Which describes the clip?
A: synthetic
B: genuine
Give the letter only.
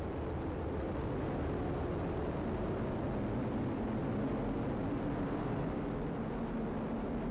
B